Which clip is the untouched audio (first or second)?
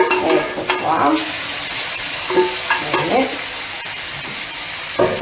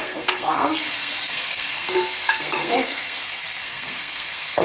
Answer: first